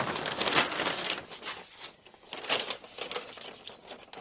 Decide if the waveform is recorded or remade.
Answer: recorded